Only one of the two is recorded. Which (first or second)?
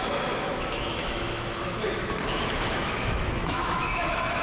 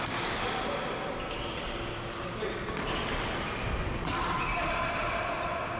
second